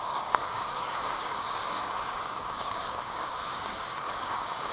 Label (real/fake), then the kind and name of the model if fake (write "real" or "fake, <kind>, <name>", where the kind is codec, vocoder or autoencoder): fake, codec, DAC